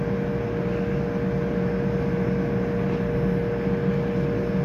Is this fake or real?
real